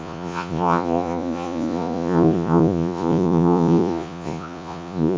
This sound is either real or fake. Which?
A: fake